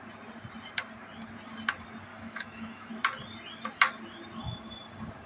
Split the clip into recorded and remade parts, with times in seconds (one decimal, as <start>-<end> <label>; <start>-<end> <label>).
0.0-2.1 recorded; 2.1-2.9 remade; 2.9-5.3 recorded